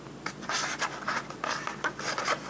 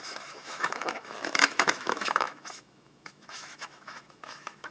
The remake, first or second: second